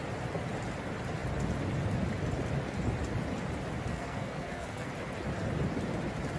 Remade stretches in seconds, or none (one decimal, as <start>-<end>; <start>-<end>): 3.9-4.9